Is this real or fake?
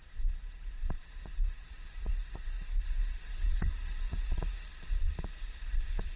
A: fake